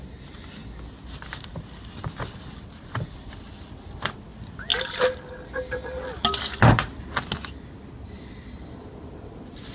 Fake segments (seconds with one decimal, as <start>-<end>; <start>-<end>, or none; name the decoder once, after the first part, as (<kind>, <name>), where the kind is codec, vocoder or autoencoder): none